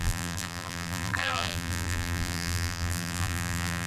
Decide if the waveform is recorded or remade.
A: remade